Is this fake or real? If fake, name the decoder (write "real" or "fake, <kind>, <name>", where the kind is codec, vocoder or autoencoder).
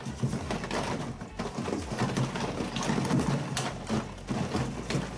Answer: real